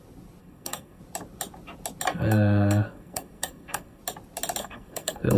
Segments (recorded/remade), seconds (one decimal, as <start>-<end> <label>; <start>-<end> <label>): 0.0-0.4 recorded; 0.4-1.0 remade; 1.0-2.1 recorded; 2.1-4.0 remade; 4.0-4.6 recorded; 4.6-5.4 remade